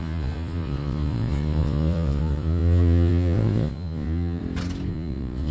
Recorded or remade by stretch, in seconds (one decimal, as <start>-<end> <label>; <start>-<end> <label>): 0.0-4.4 remade; 4.4-4.9 recorded; 4.9-5.5 remade